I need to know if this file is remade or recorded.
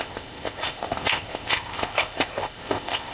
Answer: remade